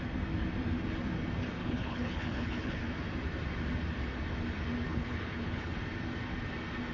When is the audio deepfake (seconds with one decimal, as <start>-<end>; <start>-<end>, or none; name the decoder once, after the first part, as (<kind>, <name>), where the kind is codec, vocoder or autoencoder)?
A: 1.6-2.8 (codec, HILCodec); 4.9-5.7